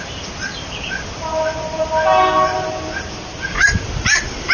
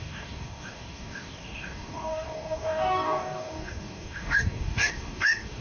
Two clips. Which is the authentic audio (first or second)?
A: first